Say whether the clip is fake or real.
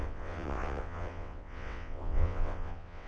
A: fake